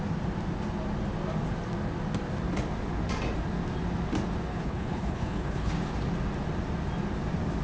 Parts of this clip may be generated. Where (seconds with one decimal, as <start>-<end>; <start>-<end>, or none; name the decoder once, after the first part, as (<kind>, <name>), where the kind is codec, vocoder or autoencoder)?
4.5-5.7 (codec, HILCodec)